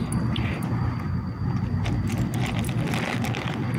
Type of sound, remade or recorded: recorded